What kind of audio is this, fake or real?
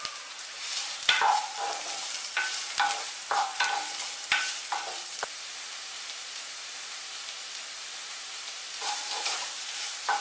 fake